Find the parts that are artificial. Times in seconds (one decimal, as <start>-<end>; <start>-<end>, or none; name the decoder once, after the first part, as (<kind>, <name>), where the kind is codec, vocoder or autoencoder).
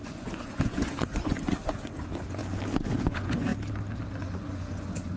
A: 0.0-2.4 (vocoder, Vocos); 3.0-3.5; 4.2-5.2